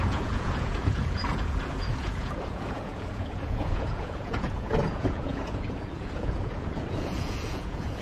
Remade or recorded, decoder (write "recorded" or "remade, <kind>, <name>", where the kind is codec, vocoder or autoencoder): remade, vocoder, Vocos